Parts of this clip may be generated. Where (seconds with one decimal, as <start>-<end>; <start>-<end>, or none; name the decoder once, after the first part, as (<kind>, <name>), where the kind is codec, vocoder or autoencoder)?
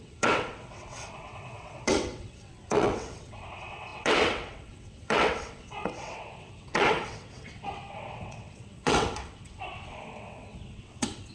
0.0-11.3 (vocoder, WaveNeXt)